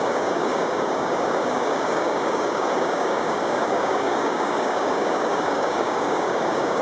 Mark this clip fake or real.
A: fake